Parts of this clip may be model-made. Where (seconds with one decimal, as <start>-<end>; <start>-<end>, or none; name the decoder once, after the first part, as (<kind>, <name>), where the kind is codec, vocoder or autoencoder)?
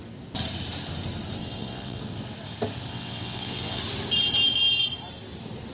1.4-2.0 (vocoder, WaveNeXt); 2.9-3.8